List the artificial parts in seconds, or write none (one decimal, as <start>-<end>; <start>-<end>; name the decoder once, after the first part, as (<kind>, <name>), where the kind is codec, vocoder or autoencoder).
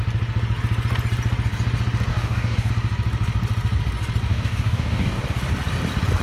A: 2.1-2.7 (codec, DAC); 4.3-5.2